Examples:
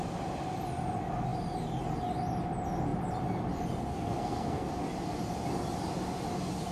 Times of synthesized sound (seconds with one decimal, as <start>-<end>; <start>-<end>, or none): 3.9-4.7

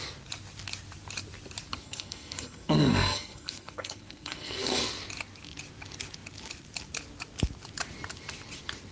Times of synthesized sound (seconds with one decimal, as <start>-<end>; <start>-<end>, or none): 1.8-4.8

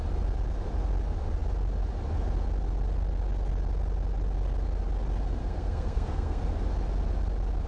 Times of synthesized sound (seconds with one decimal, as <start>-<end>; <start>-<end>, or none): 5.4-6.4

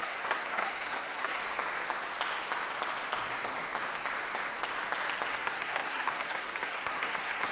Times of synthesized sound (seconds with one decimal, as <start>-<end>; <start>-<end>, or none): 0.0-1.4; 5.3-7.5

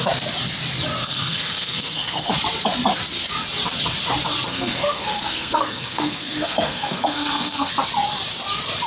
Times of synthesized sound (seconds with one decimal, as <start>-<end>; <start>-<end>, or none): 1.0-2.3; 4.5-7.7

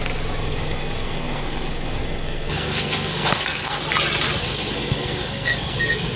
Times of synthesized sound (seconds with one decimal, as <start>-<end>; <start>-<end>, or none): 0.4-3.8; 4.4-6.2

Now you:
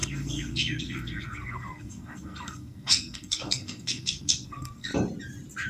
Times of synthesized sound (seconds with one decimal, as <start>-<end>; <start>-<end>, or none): 0.0-4.9

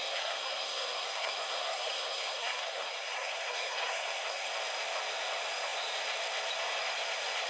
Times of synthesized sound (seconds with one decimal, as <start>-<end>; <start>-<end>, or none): 0.0-4.5